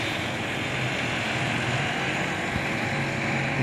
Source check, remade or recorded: remade